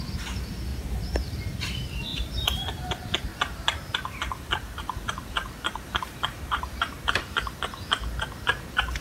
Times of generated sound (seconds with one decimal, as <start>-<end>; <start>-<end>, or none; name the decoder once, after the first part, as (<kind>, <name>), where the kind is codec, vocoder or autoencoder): 0.7-1.4 (vocoder, BigVGAN v2); 2.1-2.8; 3.3-7.6